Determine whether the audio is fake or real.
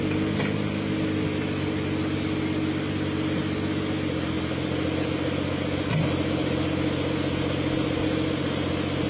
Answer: real